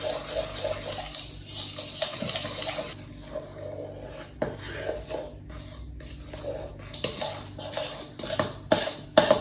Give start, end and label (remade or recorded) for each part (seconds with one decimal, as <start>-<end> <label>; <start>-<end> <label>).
0.0-9.4 recorded